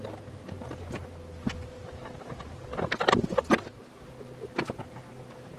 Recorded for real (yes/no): yes